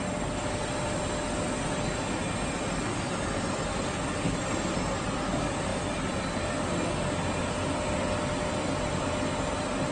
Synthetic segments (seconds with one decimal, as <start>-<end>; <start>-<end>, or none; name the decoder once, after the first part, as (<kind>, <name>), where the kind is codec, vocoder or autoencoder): none